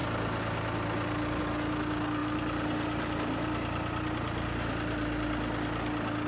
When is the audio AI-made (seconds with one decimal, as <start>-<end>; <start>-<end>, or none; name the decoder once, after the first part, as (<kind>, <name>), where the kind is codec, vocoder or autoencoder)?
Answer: none